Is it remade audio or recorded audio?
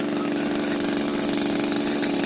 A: recorded